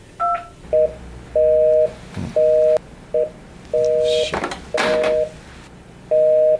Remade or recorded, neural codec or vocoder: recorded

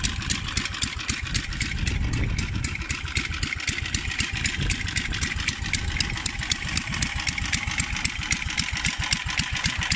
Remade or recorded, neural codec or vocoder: recorded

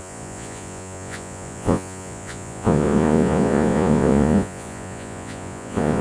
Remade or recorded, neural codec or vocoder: remade, vocoder, Vocos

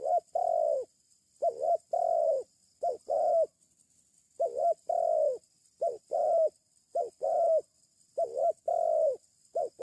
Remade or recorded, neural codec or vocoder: recorded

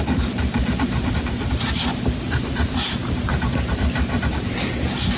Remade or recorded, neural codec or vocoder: remade, vocoder, BigVGAN v2